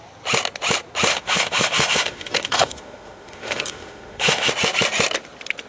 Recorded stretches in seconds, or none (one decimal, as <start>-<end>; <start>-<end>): 0.0-1.1; 4.5-5.7